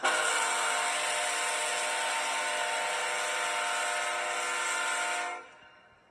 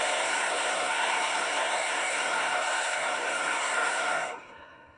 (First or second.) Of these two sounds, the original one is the first